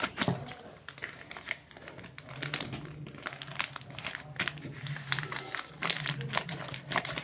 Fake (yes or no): no